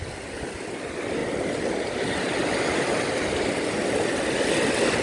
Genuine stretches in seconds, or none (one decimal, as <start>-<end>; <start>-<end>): 0.0-5.0